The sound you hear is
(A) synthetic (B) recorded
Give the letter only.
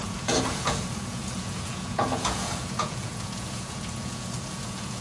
A